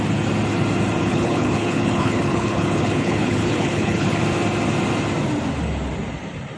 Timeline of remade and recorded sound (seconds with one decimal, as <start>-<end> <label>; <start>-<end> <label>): 0.0-1.0 recorded; 1.0-4.2 remade; 4.2-6.6 recorded